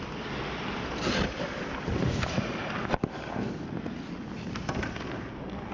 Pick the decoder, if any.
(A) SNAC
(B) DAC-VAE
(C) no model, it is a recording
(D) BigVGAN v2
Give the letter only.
C